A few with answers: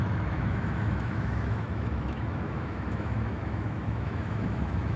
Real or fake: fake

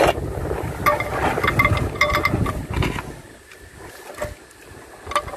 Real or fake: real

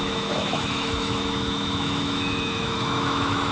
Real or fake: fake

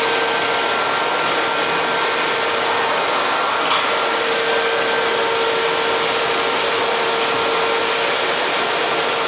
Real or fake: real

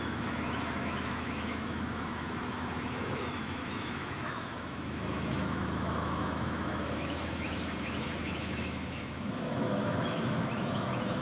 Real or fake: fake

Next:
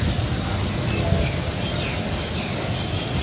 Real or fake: real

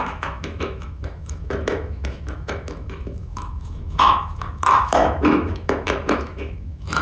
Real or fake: fake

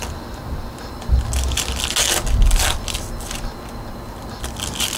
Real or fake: real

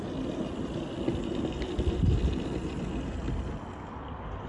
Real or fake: real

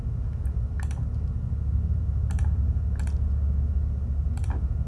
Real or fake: real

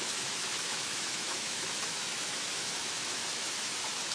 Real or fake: fake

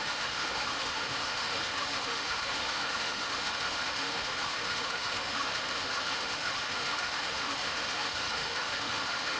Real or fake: fake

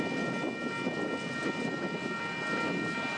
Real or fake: real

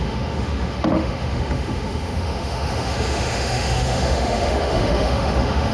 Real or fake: fake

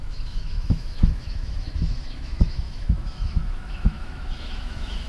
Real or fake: fake